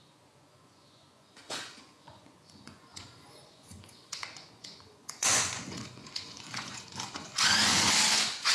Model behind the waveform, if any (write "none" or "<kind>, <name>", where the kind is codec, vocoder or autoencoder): vocoder, Vocos